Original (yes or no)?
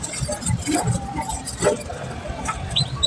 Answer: yes